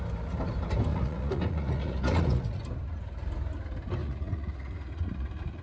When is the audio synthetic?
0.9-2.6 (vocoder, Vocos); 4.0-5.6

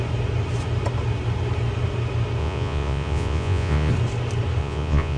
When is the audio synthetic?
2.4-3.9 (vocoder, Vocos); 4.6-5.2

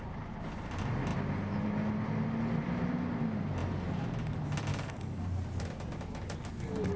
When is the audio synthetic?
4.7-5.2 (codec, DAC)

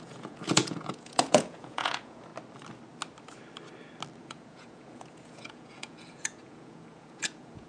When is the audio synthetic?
0.0-2.3 (vocoder, Vocos); 4.2-7.7

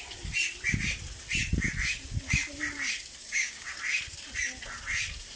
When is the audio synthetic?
3.2-3.7 (codec, DAC)

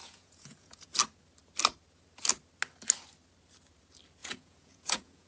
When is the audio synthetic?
0.0-0.9 (vocoder, Vocos); 4.2-5.3